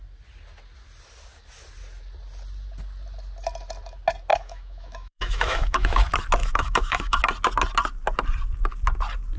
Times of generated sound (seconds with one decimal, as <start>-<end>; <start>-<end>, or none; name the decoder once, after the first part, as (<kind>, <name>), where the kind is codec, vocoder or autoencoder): 4.3-6.0 (autoencoder, DAC-VAE); 6.4-7.2